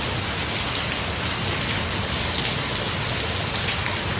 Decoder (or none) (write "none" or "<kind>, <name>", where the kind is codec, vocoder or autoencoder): none